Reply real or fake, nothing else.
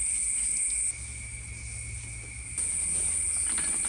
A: real